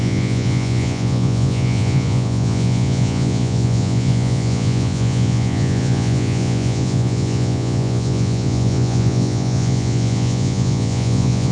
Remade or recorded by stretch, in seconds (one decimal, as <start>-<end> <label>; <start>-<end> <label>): 0.0-11.5 remade